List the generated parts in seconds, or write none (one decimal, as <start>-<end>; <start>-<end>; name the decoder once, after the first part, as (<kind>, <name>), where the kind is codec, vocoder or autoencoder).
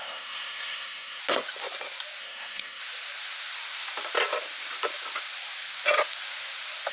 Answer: 0.0-1.2 (codec, SNAC); 2.2-2.8